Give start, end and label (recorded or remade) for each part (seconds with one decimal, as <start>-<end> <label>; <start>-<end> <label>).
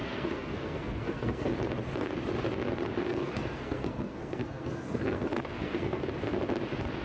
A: 0.0-1.5 remade; 1.5-3.0 recorded; 3.0-6.0 remade; 6.0-7.0 recorded